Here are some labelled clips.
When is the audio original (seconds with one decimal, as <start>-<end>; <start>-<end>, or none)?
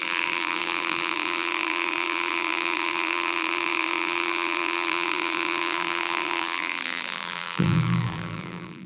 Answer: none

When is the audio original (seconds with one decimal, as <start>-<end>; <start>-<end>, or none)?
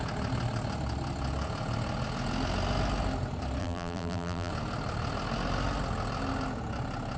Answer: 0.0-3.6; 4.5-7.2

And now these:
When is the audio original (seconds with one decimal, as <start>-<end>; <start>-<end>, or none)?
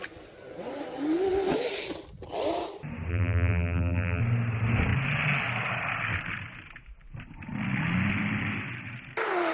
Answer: 0.0-3.1; 4.2-9.5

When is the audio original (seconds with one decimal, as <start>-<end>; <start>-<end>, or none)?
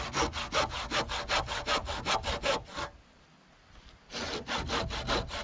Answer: 0.0-5.4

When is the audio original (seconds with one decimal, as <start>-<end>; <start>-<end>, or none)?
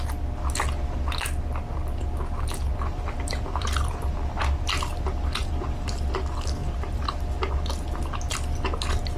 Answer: 0.0-2.7; 6.1-6.6; 7.5-9.2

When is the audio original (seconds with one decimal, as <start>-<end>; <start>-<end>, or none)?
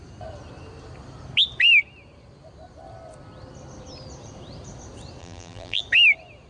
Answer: 0.0-5.2; 5.8-6.5